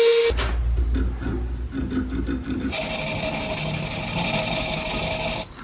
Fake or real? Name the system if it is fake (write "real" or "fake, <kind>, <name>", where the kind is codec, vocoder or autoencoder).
real